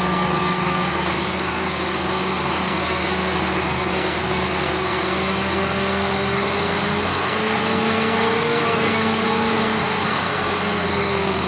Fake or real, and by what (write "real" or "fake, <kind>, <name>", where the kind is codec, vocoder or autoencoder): fake, codec, SNAC